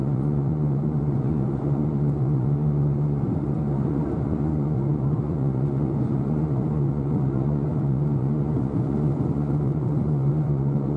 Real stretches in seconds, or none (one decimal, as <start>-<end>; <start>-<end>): none